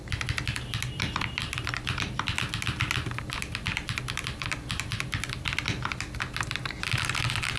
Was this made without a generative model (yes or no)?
no